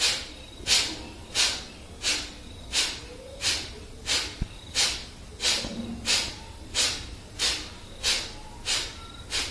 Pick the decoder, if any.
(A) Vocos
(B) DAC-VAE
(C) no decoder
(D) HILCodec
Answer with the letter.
C